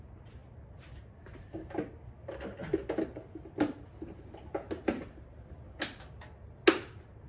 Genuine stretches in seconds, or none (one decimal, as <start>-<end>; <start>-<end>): 0.0-7.3